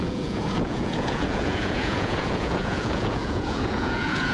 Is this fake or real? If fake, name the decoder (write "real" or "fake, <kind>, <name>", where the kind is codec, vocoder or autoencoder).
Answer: fake, vocoder, Vocos